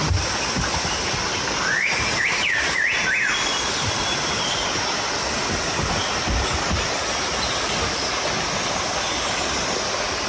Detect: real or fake real